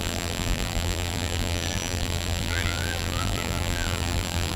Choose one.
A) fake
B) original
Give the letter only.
A